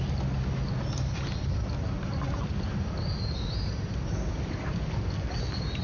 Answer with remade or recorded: recorded